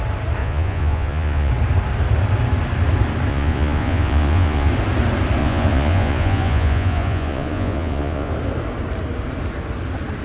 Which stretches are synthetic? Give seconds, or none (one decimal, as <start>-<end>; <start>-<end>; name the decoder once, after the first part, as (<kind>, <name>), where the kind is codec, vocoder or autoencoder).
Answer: 0.4-1.5 (vocoder, Vocos); 3.3-4.7; 5.4-8.3